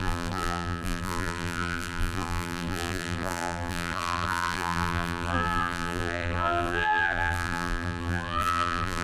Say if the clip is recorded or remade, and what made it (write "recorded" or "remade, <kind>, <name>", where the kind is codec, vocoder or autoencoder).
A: remade, vocoder, BigVGAN v2